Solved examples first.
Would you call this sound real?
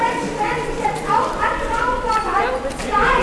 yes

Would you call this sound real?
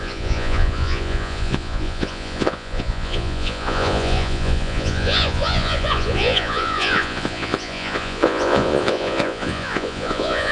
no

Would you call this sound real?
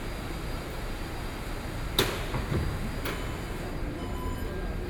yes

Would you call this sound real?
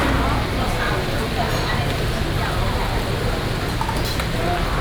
yes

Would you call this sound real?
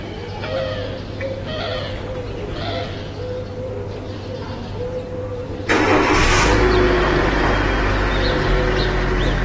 yes